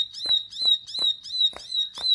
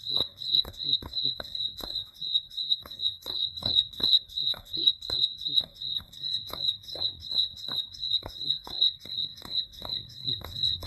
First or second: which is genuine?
first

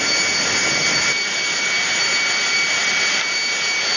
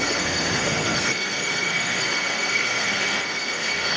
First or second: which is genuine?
first